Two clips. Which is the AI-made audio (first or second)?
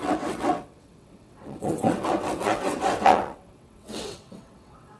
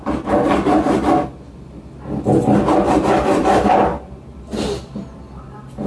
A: first